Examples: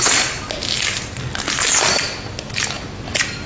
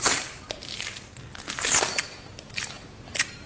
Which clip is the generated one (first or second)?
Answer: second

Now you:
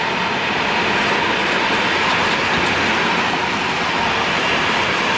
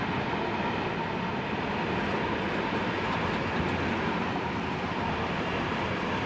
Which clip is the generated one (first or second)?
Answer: second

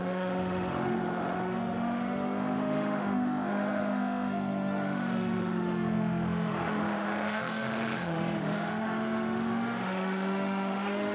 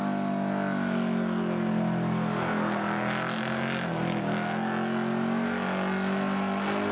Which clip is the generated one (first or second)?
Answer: first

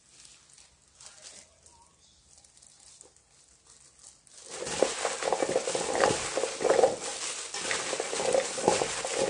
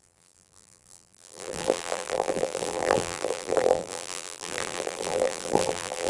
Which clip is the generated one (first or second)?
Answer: second